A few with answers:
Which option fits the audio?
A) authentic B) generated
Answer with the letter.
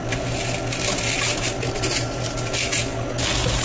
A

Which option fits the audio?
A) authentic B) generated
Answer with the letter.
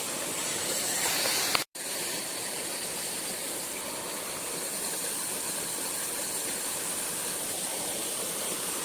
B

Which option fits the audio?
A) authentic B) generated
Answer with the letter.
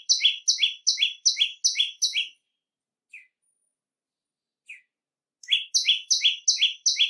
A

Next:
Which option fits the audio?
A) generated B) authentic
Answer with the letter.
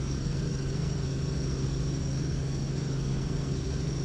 A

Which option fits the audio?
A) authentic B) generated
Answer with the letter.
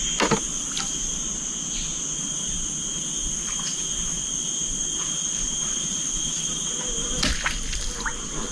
A